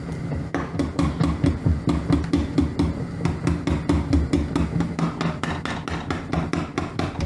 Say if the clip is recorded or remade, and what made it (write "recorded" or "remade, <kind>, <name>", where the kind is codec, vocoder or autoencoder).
recorded